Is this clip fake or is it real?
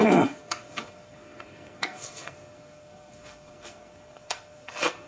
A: fake